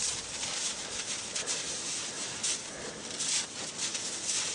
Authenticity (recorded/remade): recorded